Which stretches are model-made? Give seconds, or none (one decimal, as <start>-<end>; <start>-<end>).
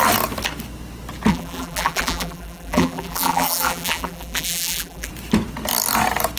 1.3-5.1